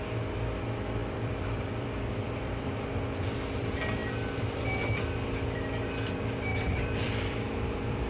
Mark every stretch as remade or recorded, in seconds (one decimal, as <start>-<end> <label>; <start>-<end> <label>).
0.0-1.0 recorded; 1.0-2.7 remade; 2.7-6.5 recorded; 6.5-8.1 remade